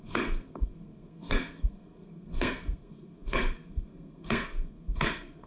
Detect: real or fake fake